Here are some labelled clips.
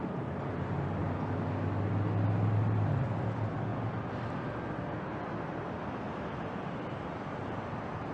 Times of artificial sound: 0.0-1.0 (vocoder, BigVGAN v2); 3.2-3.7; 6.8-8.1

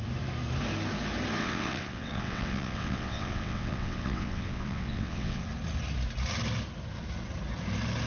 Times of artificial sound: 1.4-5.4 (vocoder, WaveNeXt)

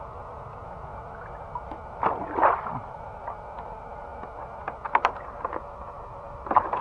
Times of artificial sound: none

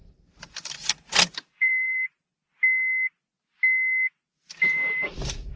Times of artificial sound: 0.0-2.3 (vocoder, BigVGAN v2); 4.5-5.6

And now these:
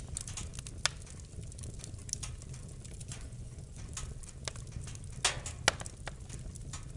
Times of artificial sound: 3.0-3.8 (vocoder, Vocos)